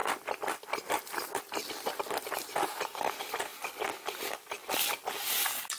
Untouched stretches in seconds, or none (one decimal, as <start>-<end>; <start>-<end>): 0.0-5.8

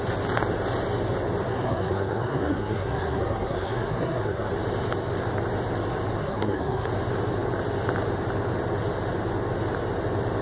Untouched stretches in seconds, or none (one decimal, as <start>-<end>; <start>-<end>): 0.0-1.5; 4.5-6.2; 6.9-10.4

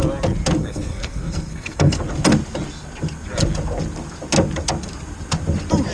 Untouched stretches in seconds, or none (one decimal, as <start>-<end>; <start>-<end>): 0.0-0.6; 2.0-5.9

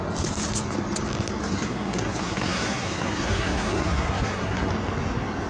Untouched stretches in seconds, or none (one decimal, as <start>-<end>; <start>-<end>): 0.0-1.4; 4.7-5.5

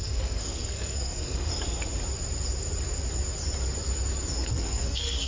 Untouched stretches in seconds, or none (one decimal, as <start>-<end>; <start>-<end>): 1.5-4.5

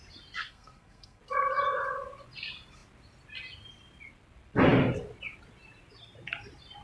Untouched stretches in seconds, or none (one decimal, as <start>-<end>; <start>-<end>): 0.0-0.4; 1.2-6.8

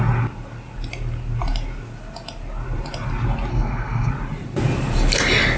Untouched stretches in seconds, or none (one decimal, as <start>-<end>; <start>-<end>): 0.0-3.5; 4.1-5.6